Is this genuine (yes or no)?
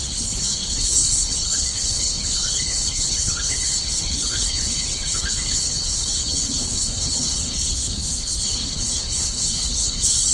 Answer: no